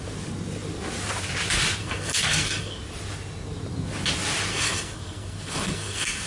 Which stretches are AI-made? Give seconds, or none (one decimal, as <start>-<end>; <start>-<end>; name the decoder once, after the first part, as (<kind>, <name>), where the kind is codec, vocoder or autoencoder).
1.8-2.8 (codec, SNAC); 4.5-6.3